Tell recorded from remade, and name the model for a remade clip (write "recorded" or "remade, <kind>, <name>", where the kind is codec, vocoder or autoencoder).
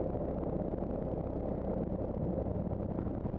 recorded